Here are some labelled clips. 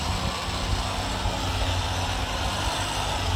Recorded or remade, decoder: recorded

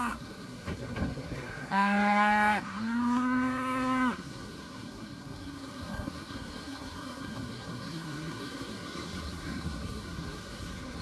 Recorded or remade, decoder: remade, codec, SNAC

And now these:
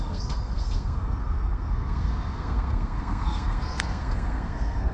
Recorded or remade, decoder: remade, codec, SNAC